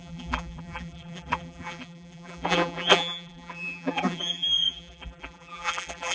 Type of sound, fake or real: fake